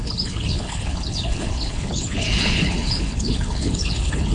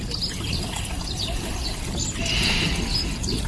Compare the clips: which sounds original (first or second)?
second